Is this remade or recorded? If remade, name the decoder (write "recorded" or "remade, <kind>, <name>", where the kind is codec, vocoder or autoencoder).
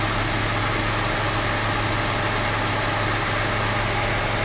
recorded